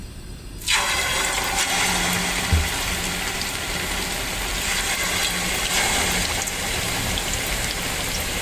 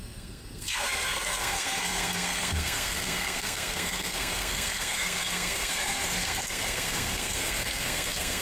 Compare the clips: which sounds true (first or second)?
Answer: first